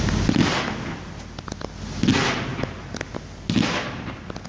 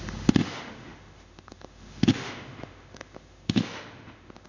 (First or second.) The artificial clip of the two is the second